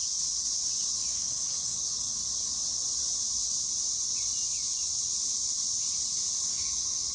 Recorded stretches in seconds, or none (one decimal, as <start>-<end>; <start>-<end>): 0.0-0.9; 2.2-6.5